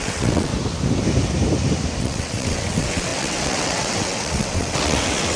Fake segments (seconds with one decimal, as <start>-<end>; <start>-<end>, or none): 0.0-0.5; 2.0-5.4

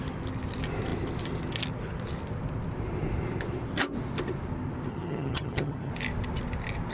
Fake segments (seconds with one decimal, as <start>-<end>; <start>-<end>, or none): 4.9-5.9